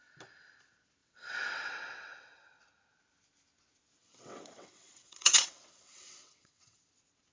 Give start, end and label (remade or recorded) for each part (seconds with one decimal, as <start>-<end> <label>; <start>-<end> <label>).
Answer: 0.0-1.0 recorded; 1.0-2.6 remade; 2.6-4.0 recorded; 4.0-6.8 remade; 6.8-7.3 recorded